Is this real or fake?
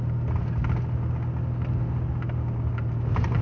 real